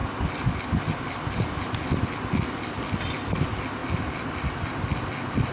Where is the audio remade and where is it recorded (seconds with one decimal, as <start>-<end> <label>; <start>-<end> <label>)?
0.0-5.5 recorded